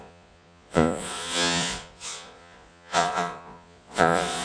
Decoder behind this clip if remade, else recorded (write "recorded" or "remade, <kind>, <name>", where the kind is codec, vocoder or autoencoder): remade, vocoder, Vocos